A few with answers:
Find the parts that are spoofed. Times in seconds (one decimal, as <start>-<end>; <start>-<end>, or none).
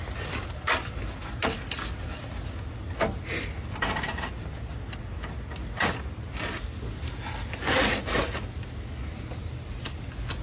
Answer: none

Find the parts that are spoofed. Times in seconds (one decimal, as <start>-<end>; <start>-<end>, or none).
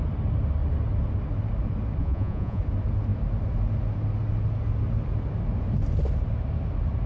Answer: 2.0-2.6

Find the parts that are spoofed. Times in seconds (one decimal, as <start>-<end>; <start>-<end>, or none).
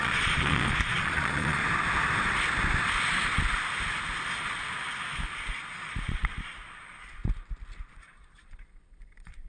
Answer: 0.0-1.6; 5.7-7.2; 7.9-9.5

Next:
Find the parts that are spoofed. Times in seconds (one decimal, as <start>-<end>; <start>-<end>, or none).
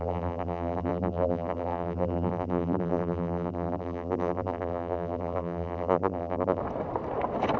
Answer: 0.0-6.6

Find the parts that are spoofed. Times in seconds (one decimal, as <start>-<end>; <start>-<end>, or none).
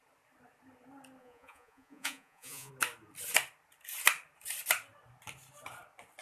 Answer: 1.2-2.7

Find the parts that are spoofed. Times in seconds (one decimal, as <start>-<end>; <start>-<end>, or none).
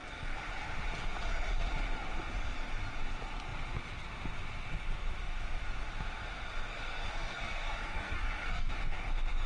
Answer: 6.7-8.7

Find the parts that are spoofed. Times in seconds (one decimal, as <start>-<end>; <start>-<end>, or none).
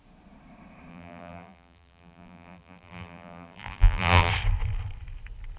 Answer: 0.9-4.3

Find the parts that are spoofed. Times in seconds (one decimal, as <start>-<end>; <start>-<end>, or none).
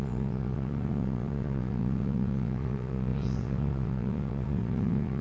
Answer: 0.0-5.2